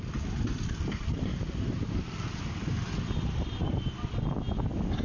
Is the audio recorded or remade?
recorded